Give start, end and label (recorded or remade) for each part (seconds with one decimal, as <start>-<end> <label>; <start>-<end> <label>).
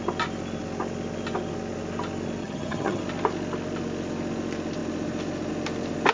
0.0-2.4 recorded; 2.4-3.0 remade; 3.0-6.1 recorded